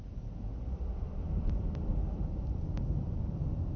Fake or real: fake